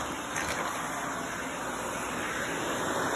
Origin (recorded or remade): recorded